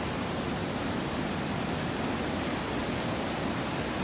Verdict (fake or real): real